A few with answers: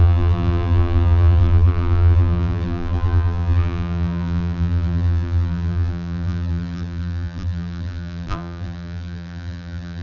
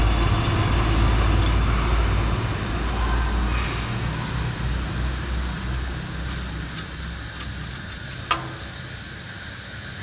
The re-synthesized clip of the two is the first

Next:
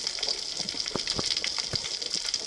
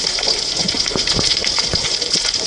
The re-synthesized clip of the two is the second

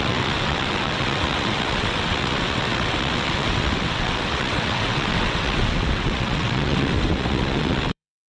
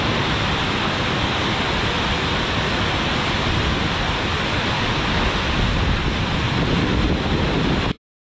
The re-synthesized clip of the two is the first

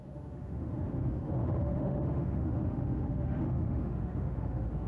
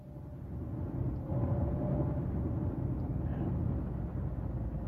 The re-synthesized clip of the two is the first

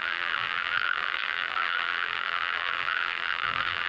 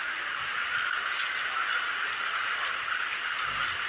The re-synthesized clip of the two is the first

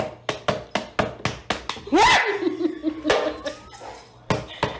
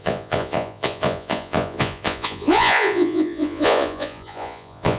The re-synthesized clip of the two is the second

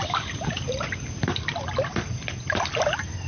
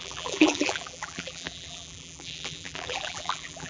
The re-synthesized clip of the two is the second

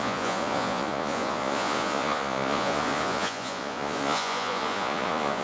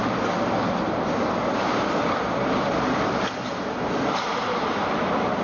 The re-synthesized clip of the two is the first